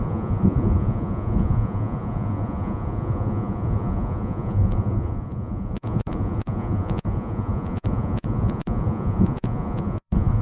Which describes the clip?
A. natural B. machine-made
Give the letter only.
B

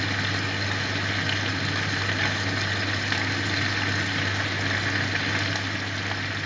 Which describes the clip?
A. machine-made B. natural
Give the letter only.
B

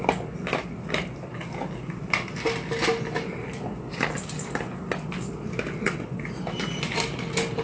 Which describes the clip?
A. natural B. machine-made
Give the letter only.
A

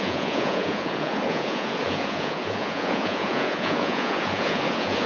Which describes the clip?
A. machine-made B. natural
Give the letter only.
A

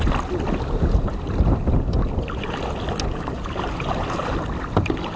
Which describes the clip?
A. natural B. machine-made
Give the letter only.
A